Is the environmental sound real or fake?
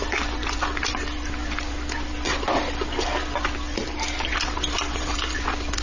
real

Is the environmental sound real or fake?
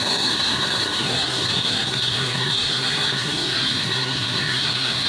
fake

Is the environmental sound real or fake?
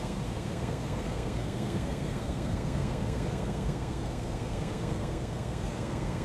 fake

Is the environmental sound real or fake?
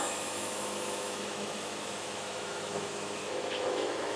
fake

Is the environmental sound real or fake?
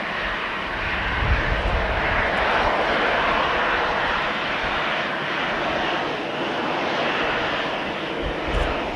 real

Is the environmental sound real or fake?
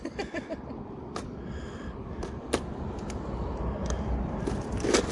real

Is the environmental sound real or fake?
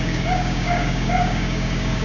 fake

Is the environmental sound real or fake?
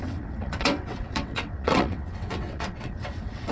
fake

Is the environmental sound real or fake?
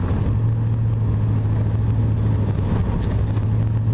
real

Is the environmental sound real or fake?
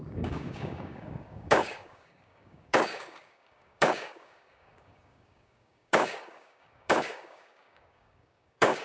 fake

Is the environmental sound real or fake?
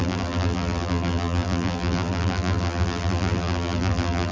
fake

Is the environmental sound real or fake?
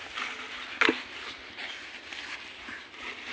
real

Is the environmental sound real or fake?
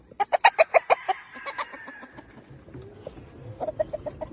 real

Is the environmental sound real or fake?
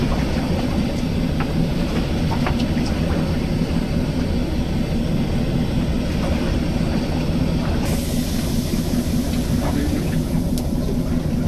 real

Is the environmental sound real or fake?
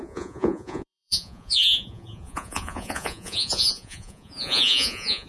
fake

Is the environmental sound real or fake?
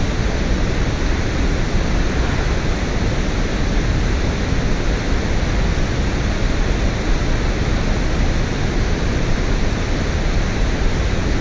real